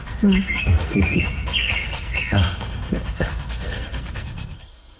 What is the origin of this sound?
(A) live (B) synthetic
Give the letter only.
B